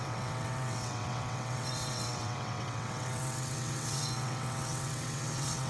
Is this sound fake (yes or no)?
yes